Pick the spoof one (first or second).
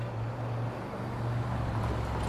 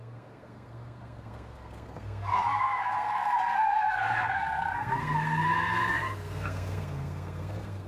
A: second